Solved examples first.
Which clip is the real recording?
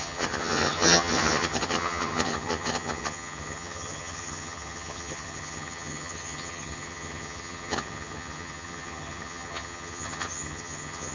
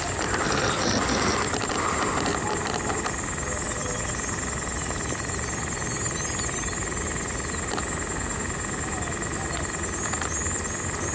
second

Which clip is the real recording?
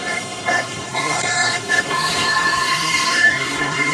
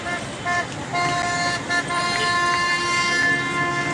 second